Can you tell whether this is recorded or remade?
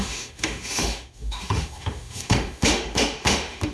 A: remade